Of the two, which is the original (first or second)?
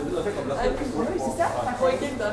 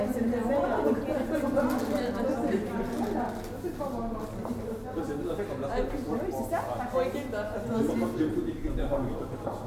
second